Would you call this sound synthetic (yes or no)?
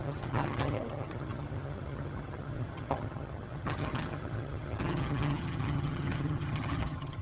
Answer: yes